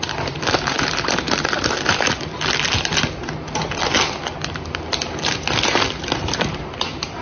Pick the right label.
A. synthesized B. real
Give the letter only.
B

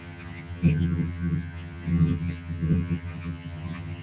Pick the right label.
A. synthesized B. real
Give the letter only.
A